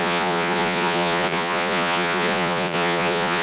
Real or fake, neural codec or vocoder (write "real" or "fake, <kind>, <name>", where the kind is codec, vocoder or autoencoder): fake, vocoder, Vocos